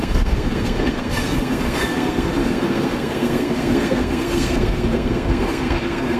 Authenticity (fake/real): fake